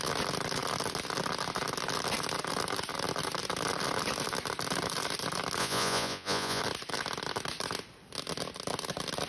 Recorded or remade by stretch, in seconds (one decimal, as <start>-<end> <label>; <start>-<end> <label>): 0.0-5.6 recorded; 5.6-6.6 remade; 6.6-9.3 recorded